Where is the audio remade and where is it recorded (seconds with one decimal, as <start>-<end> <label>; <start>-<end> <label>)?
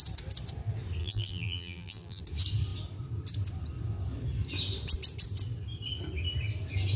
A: 0.0-1.0 recorded; 1.0-2.2 remade; 2.2-7.0 recorded